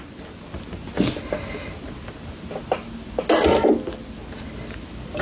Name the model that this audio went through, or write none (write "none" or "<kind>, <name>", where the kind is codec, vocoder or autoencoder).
none